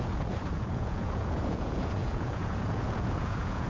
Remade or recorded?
remade